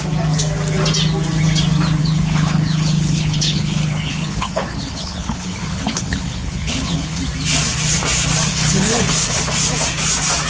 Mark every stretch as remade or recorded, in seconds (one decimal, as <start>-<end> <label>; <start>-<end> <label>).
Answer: 0.0-2.0 recorded; 2.0-7.2 remade; 7.2-8.5 recorded; 8.5-9.4 remade; 9.4-10.5 recorded